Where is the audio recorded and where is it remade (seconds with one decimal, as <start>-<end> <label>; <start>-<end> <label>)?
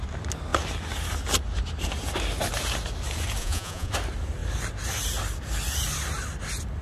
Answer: 0.0-3.4 recorded; 3.4-3.9 remade; 3.9-6.8 recorded